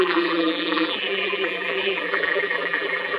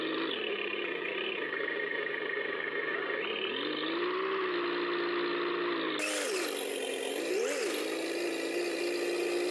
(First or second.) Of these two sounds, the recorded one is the second